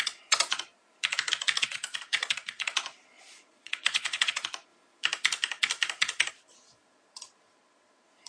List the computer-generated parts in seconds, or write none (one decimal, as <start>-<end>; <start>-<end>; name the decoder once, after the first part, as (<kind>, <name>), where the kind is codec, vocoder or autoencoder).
0.0-0.8 (vocoder, Vocos); 1.6-4.7; 6.3-8.3